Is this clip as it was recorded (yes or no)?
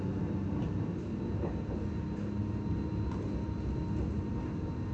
yes